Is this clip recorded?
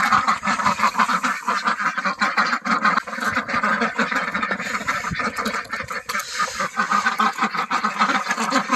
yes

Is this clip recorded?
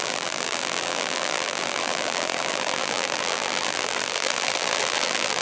no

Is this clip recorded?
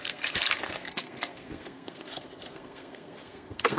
no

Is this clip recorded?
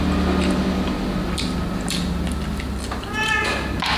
yes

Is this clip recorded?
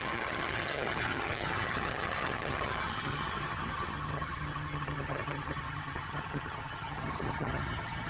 no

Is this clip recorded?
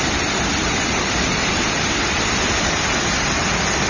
yes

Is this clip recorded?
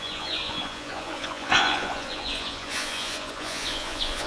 no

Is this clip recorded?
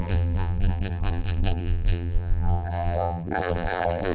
no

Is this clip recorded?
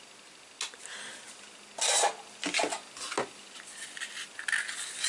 yes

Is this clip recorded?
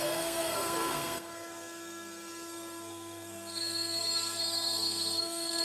no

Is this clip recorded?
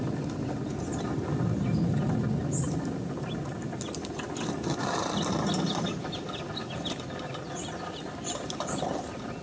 yes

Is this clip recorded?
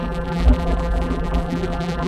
no